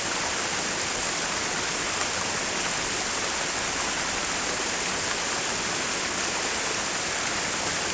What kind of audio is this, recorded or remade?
recorded